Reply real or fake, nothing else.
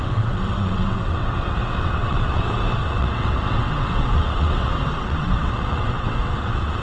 fake